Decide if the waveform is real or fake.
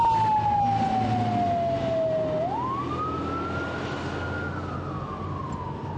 real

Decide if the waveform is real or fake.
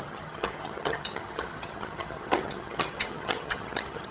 fake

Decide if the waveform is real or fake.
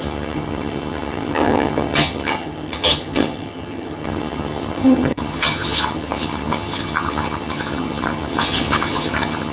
fake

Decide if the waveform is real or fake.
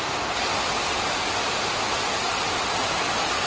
real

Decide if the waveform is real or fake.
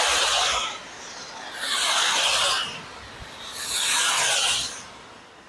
real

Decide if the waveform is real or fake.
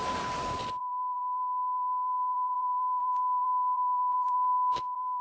fake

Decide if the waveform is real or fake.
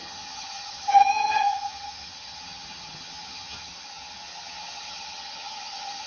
fake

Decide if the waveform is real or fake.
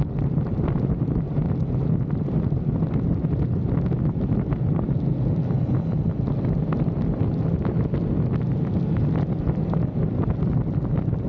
real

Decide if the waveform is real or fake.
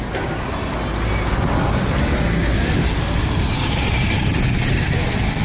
real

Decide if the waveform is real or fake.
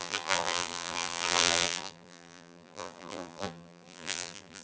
fake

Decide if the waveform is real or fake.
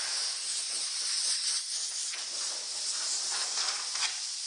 real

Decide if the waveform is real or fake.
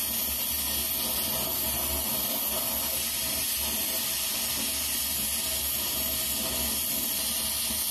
real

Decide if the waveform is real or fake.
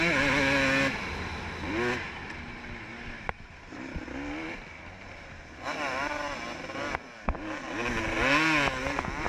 real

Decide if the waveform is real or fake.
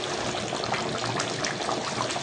real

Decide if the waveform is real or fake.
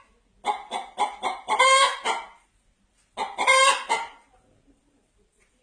real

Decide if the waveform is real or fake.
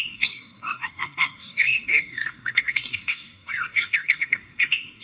fake